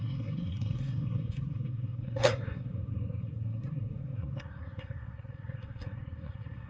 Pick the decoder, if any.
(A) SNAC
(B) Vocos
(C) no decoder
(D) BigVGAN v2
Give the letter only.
A